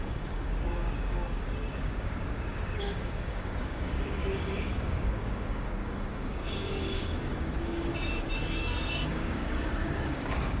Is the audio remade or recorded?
remade